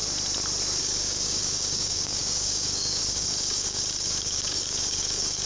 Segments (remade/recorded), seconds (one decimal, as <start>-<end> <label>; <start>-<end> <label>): 0.0-0.8 recorded; 0.8-5.5 remade

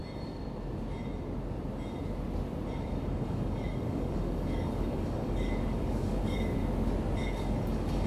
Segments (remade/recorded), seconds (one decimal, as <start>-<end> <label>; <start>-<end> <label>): 0.0-2.8 recorded; 2.8-6.6 remade; 6.6-7.2 recorded; 7.2-8.1 remade

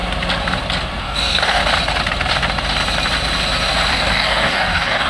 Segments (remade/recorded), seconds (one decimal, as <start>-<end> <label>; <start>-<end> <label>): 0.0-1.0 recorded; 1.0-1.6 remade; 1.6-3.9 recorded; 3.9-5.1 remade

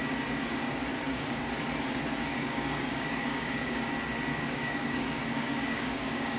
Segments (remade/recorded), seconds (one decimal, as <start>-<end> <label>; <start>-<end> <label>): 0.0-0.9 recorded; 0.9-1.5 remade; 1.5-2.3 recorded; 2.3-3.9 remade; 3.9-4.3 recorded; 4.3-6.4 remade

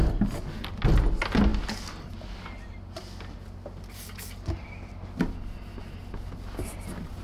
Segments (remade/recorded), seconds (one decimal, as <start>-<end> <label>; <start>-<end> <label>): 0.0-7.2 recorded

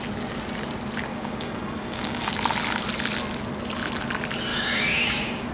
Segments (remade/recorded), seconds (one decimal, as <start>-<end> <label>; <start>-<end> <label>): 0.0-1.1 recorded; 1.1-2.3 remade; 2.3-4.5 recorded; 4.5-5.5 remade